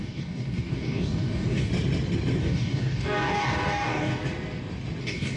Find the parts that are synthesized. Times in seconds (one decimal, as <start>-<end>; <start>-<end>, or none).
0.0-1.7; 2.4-4.1; 5.0-5.4